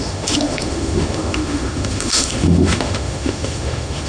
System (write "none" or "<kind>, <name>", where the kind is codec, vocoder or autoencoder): autoencoder, DAC-VAE